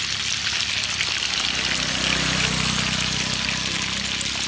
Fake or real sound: real